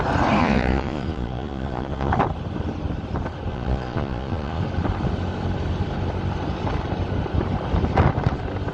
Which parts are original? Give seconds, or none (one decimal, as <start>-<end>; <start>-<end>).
0.0-0.4; 2.1-3.5; 4.6-8.7